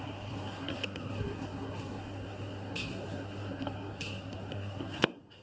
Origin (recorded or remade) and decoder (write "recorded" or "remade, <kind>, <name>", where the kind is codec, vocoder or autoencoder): remade, codec, SNAC